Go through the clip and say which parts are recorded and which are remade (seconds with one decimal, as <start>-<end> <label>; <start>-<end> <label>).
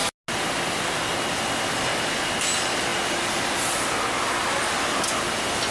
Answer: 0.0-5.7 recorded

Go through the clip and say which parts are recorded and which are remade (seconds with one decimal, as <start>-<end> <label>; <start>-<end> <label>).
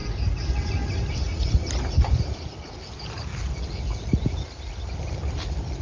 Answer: 0.0-5.8 recorded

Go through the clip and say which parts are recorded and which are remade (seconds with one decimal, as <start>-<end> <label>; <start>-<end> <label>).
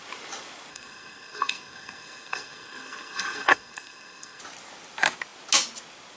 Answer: 0.0-0.7 recorded; 0.7-4.4 remade; 4.4-6.2 recorded